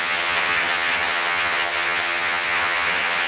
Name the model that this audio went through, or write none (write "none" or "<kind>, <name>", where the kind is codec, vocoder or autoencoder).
vocoder, HiFi-GAN